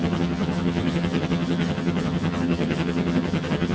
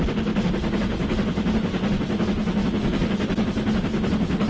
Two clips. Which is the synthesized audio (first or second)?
first